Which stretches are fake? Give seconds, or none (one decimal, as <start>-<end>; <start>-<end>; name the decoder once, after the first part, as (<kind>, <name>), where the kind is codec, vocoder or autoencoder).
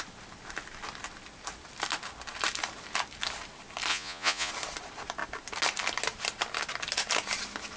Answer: 3.9-4.5 (vocoder, Vocos)